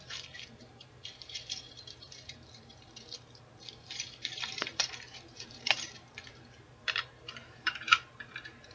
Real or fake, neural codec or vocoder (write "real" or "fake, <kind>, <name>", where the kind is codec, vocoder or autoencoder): fake, vocoder, BigVGAN v2